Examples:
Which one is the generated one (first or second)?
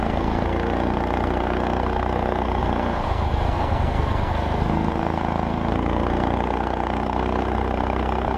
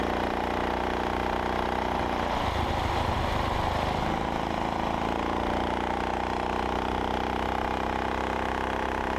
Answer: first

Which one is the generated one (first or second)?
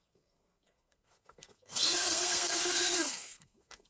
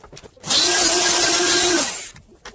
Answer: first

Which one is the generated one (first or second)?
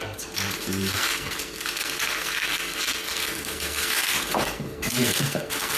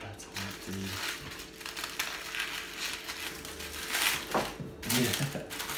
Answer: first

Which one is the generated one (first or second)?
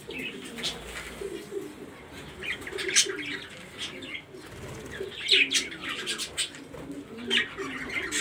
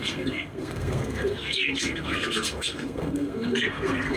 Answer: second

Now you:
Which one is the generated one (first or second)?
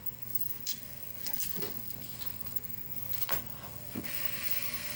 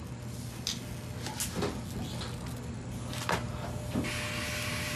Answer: first